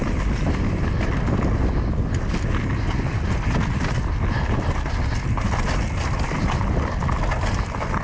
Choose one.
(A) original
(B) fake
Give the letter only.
A